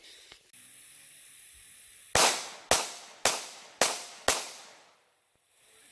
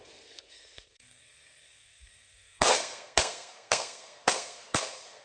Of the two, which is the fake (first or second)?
second